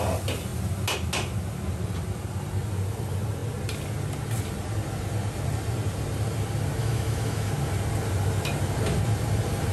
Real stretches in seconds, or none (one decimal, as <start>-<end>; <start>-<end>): 0.0-6.8; 7.5-9.7